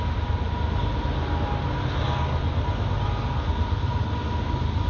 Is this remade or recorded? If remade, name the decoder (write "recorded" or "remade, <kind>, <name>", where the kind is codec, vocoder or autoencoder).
recorded